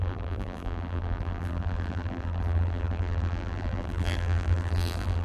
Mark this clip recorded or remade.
remade